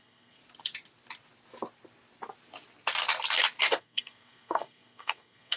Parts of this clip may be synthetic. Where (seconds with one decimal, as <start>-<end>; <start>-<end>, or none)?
0.0-0.4; 3.8-5.6